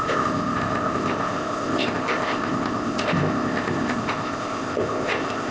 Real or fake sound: fake